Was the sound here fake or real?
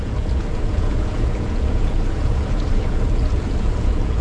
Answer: fake